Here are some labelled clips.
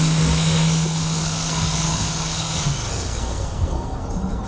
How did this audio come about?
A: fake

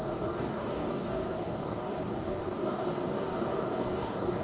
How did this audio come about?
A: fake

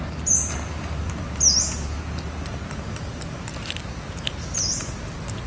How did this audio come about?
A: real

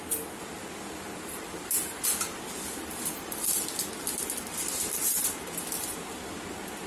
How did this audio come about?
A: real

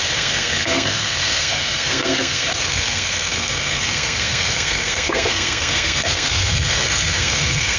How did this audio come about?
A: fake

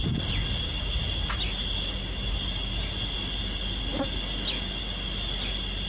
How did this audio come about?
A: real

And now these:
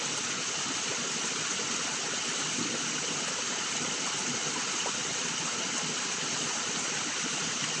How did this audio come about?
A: real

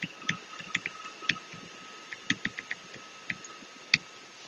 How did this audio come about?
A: real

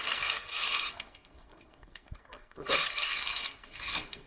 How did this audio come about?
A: fake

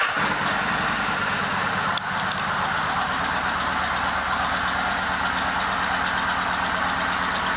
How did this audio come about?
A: fake